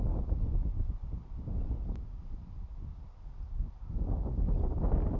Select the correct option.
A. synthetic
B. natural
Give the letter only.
B